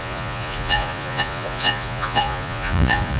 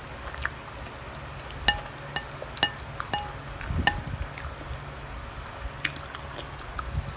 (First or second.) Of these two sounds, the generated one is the first